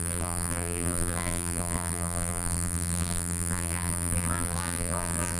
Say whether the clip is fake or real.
fake